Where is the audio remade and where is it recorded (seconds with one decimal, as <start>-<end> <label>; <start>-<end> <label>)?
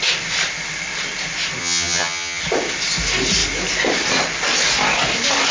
0.0-1.6 recorded; 1.6-2.4 remade; 2.4-5.5 recorded